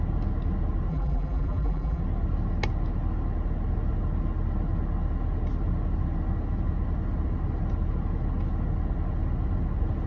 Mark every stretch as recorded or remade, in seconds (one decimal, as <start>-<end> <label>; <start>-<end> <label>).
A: 0.0-0.9 recorded; 0.9-2.0 remade; 2.0-10.1 recorded